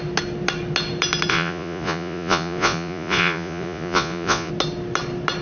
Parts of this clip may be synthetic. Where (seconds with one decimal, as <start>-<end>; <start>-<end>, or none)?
1.3-4.5